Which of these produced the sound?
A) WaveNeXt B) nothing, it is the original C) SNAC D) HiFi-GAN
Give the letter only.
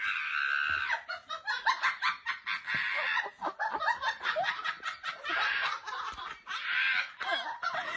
B